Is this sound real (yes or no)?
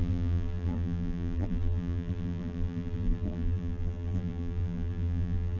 no